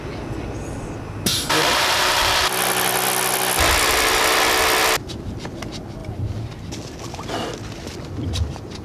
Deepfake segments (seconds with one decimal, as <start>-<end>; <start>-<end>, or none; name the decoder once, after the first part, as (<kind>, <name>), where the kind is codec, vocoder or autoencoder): 1.3-2.3 (vocoder, BigVGAN v2); 6.0-6.6